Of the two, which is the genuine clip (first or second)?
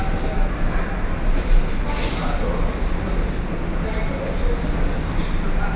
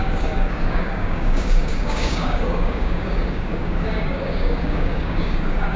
first